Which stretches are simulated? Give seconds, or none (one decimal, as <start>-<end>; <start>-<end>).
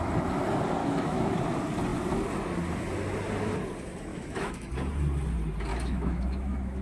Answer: 0.8-1.4; 4.1-4.7; 5.7-6.8